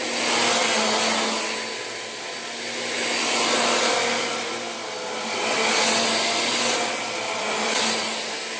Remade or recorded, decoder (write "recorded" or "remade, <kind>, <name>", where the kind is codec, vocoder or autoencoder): recorded